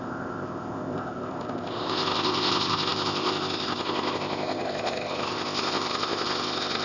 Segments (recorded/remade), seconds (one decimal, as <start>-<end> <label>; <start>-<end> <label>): 0.0-6.8 remade